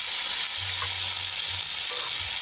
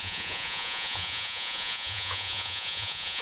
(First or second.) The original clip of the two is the first